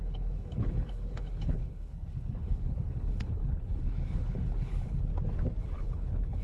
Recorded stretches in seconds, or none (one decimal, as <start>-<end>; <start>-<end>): 5.1-5.6